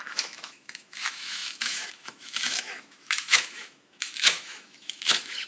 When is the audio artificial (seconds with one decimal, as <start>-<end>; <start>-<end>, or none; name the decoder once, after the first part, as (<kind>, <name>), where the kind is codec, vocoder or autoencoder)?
0.0-5.5 (autoencoder, DAC-VAE)